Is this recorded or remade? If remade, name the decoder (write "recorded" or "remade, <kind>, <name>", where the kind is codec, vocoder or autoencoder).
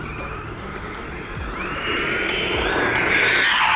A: recorded